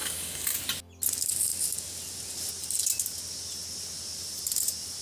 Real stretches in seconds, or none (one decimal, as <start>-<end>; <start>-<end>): 0.6-5.0